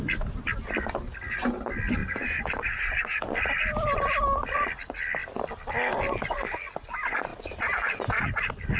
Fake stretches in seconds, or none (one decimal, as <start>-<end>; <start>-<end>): 2.0-3.2